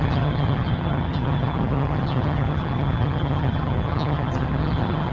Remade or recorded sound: remade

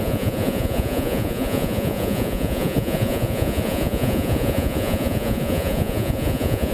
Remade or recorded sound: remade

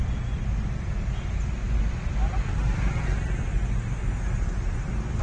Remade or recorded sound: recorded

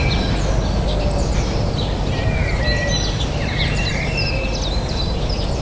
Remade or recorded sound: recorded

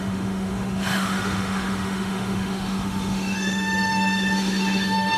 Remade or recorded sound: remade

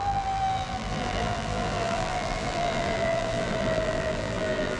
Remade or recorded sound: remade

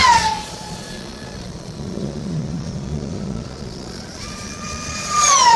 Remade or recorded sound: remade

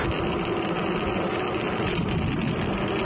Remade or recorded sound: recorded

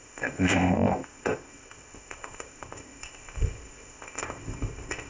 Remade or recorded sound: remade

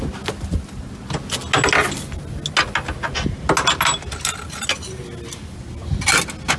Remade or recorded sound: recorded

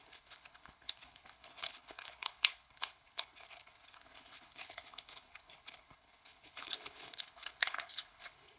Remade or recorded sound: remade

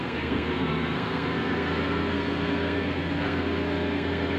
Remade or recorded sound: remade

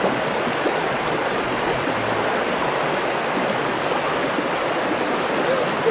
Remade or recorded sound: recorded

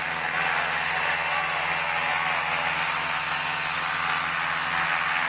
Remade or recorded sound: recorded